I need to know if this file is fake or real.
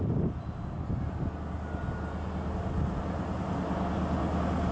real